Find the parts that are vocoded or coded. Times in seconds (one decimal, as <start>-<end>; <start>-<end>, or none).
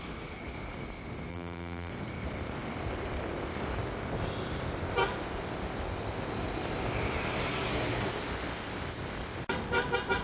1.3-1.9